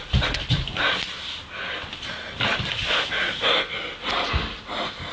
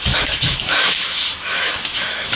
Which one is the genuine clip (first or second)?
first